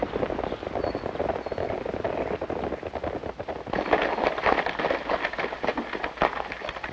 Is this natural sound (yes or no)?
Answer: yes